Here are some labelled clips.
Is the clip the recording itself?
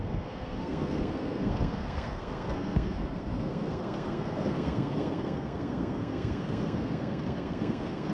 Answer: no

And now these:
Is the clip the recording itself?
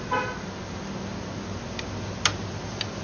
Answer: yes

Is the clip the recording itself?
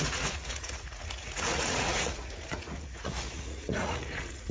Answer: no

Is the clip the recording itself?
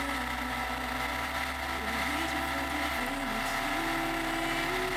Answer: yes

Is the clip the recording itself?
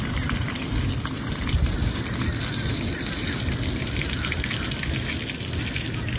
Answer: yes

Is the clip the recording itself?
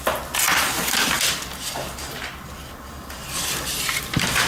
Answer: yes